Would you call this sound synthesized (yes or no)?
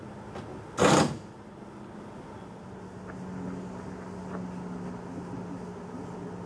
no